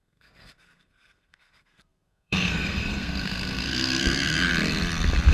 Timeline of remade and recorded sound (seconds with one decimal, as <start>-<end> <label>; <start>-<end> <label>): 0.0-4.5 remade; 4.5-5.3 recorded